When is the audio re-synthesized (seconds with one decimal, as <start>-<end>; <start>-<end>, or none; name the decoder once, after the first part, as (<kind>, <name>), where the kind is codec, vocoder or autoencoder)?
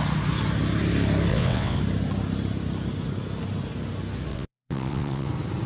1.3-1.8 (vocoder, WaveNeXt); 4.3-5.3